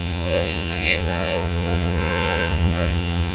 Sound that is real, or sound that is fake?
fake